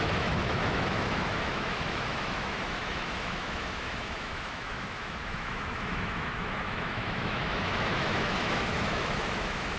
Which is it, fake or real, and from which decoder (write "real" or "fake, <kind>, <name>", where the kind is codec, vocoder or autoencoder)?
fake, autoencoder, DAC-VAE